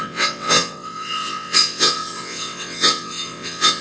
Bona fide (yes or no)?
no